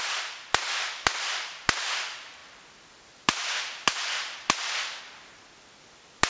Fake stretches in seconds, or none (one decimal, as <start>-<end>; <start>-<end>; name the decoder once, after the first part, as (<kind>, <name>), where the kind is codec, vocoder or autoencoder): none